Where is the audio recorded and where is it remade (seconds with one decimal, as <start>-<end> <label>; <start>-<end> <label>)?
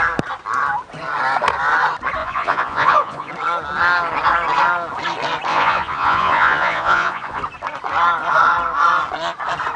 0.0-2.2 recorded; 2.2-3.3 remade; 3.3-5.5 recorded; 5.5-7.4 remade; 7.4-9.8 recorded